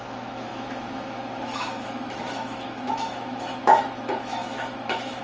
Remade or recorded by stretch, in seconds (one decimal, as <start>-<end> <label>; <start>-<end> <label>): 0.0-5.2 remade